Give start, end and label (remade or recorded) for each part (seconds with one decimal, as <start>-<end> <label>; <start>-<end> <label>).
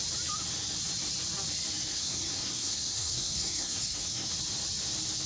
0.0-1.9 recorded; 1.9-4.3 remade; 4.3-5.3 recorded